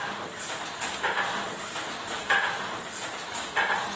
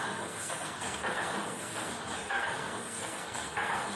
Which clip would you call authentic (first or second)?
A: first